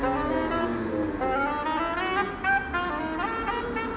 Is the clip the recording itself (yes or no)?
yes